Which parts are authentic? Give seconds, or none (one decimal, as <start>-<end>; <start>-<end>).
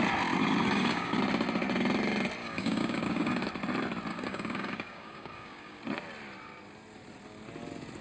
0.0-0.6; 1.2-2.4; 3.4-4.1; 5.8-8.0